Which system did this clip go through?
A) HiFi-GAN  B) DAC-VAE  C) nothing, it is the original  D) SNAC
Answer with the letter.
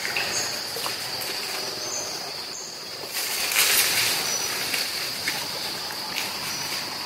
C